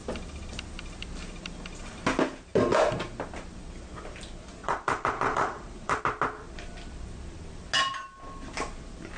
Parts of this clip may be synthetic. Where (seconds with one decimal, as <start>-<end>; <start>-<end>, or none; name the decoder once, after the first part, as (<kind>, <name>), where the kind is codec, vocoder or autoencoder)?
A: 4.6-6.0 (vocoder, Vocos)